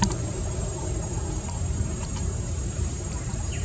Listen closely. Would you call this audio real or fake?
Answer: fake